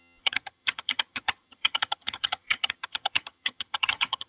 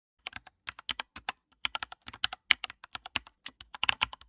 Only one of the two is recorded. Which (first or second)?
second